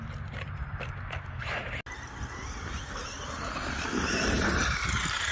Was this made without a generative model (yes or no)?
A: yes